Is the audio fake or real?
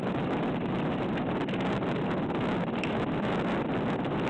real